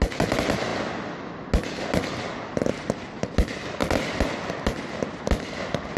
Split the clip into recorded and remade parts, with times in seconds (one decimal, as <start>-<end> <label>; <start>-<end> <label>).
0.0-6.0 recorded